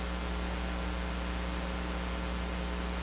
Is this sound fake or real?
real